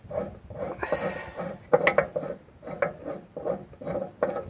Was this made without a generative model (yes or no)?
yes